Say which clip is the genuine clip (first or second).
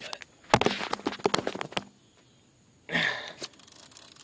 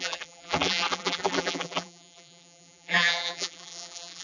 first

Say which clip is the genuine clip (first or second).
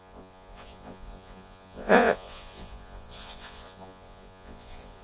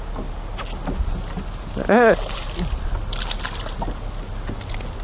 second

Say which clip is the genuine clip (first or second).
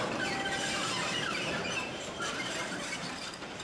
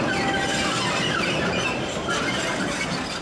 second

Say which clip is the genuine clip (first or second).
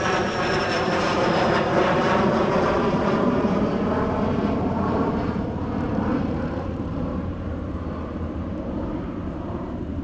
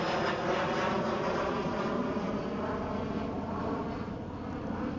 second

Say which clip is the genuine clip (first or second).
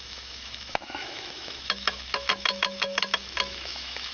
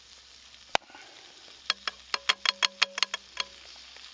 second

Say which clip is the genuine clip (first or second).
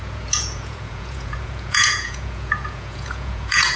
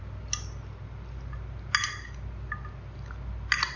second